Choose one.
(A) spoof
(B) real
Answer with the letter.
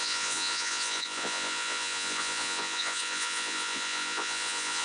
A